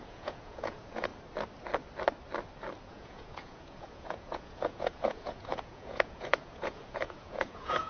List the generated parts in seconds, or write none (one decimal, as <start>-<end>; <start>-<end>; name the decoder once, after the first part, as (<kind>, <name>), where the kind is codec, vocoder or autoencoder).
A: 0.0-1.1 (vocoder, Vocos); 2.8-7.9